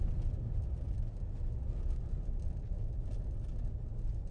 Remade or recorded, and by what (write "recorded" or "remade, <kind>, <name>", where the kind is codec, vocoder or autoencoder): recorded